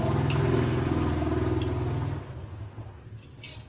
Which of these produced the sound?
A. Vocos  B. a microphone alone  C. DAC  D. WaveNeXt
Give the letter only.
B